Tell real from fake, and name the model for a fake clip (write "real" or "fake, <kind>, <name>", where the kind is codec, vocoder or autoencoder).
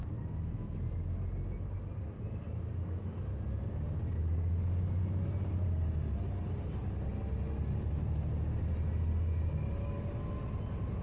real